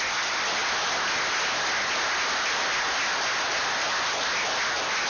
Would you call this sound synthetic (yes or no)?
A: no